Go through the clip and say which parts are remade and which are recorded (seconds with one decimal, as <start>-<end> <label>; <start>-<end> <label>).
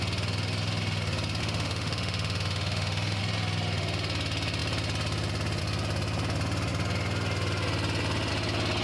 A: 0.0-1.4 recorded; 1.4-3.2 remade; 3.2-8.8 recorded